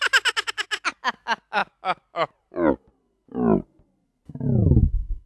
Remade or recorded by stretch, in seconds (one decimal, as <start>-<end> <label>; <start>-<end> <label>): 0.0-5.3 recorded